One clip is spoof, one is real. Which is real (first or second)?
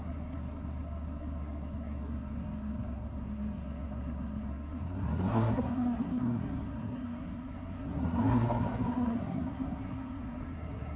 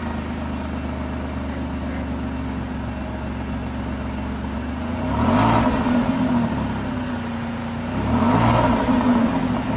second